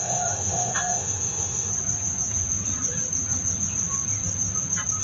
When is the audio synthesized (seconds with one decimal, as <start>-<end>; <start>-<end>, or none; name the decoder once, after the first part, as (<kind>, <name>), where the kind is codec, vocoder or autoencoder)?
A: 0.0-1.7 (autoencoder, DAC-VAE)